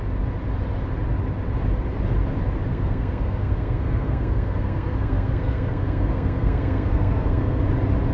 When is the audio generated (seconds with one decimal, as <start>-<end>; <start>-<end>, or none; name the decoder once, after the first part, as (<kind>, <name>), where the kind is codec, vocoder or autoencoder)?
2.7-7.6 (codec, SNAC)